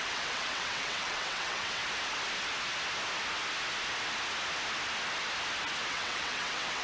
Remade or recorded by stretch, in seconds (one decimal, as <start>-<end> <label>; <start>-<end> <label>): 0.0-1.8 remade; 1.8-5.9 recorded; 5.9-6.8 remade